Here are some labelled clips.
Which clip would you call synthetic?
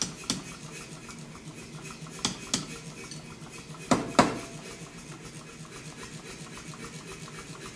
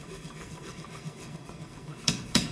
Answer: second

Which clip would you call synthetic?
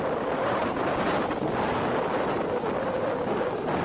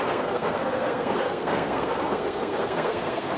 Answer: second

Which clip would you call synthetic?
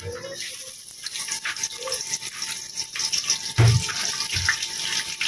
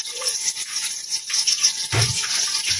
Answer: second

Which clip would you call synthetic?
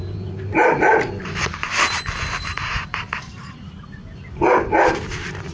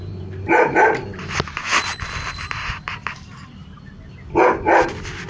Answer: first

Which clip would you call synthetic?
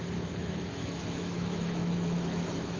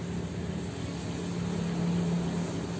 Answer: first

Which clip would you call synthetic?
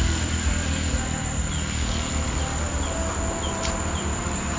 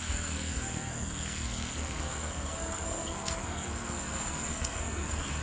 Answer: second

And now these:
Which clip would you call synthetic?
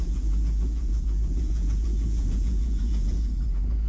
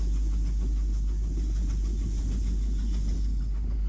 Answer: first